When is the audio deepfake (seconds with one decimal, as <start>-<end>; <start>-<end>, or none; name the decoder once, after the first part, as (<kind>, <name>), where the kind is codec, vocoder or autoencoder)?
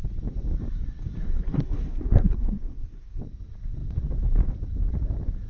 1.2-3.2 (codec, SNAC)